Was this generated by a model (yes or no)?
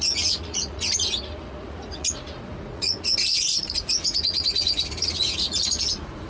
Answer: yes